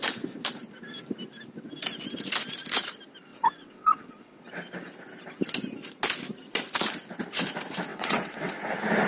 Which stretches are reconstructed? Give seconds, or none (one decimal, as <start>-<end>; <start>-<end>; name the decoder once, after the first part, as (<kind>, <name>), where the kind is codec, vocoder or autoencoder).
3.3-4.4 (vocoder, WaveNeXt); 7.9-8.5